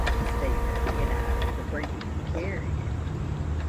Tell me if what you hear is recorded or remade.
remade